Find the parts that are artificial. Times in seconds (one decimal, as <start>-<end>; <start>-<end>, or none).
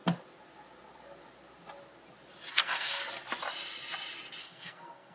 2.5-3.0; 4.4-5.1